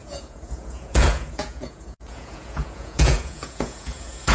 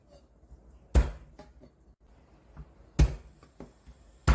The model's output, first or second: first